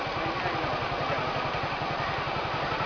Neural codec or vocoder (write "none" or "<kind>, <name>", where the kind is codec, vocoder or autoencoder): none